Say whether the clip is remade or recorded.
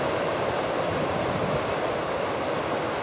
recorded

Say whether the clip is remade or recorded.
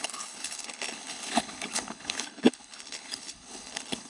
remade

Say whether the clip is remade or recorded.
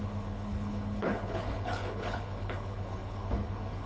remade